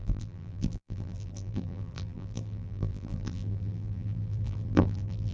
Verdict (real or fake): fake